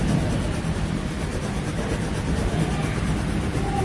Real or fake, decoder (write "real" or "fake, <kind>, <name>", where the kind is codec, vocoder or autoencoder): real